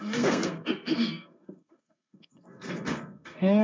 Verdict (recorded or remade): remade